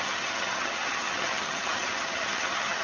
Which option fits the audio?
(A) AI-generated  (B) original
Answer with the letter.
A